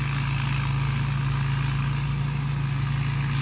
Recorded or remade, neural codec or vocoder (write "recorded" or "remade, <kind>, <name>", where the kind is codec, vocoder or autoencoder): recorded